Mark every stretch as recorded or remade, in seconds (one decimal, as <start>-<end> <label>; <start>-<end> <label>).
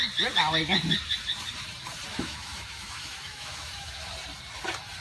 0.0-2.1 recorded; 2.1-4.1 remade; 4.1-5.0 recorded